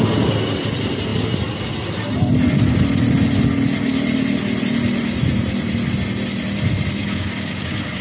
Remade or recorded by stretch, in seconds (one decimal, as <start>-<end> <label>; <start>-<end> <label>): 0.0-7.0 recorded; 7.0-8.0 remade